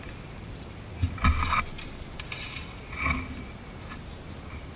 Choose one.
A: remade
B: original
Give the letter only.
B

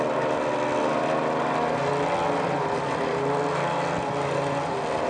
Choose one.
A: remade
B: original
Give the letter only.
B